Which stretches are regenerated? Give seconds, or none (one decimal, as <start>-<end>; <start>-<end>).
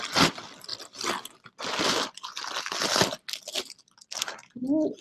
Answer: none